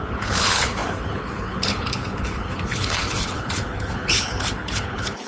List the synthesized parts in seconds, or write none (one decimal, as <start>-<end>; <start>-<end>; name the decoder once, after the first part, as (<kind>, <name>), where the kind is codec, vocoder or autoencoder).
0.0-5.3 (codec, HILCodec)